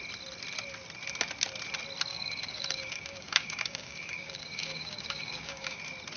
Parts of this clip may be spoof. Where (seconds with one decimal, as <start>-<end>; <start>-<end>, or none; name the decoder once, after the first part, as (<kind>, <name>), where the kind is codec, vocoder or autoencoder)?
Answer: 2.1-5.8 (codec, DAC)

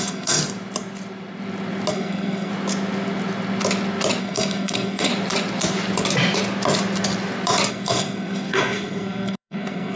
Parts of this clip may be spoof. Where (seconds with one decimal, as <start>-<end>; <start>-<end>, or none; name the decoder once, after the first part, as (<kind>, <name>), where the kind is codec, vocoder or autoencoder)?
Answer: 0.0-0.4 (codec, SNAC); 1.9-2.5; 4.2-5.1; 7.7-10.0

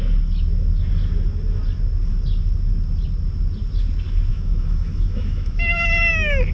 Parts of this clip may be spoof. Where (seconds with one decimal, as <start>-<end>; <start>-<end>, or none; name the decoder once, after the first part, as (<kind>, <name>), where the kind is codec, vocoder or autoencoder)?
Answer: 4.3-6.1 (autoencoder, DAC-VAE)

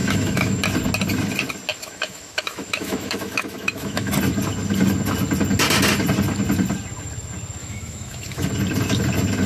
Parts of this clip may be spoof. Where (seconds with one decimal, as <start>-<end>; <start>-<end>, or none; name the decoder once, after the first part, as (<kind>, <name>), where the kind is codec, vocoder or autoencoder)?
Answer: 0.0-0.6 (autoencoder, DAC-VAE); 1.7-4.1; 7.6-8.5

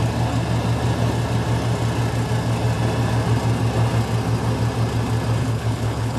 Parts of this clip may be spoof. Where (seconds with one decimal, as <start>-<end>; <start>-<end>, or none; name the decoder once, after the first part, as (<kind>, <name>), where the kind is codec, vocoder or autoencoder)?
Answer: 5.4-6.2 (codec, HILCodec)